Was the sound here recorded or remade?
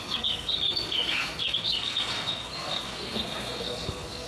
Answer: remade